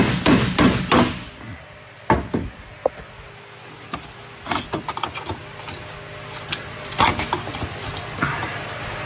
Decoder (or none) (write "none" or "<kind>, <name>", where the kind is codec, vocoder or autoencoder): none